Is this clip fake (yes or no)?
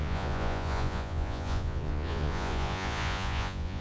yes